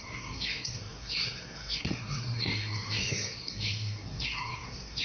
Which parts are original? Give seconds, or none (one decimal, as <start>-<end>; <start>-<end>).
none